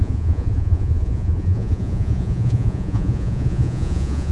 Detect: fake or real fake